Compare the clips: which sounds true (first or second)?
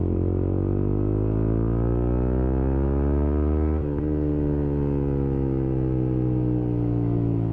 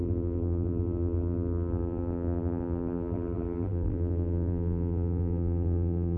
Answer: first